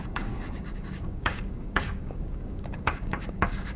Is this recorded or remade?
remade